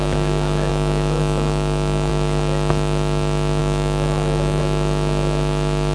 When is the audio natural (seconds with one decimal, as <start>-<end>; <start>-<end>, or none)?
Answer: 0.0-0.7; 2.1-3.6; 4.6-5.9